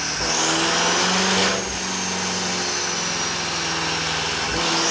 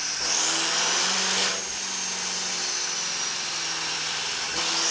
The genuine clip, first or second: first